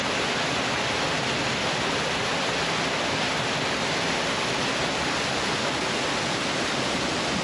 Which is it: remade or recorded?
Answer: recorded